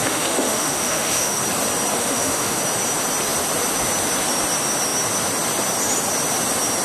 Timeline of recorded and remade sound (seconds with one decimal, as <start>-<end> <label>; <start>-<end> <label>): 0.0-1.4 remade; 1.4-2.0 recorded; 2.0-2.6 remade; 2.6-6.8 recorded